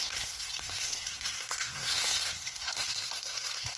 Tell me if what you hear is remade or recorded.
remade